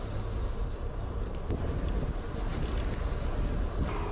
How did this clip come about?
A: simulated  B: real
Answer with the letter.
B